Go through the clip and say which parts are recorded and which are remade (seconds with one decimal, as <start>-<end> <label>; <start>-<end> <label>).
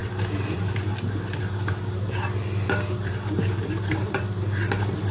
0.0-5.1 recorded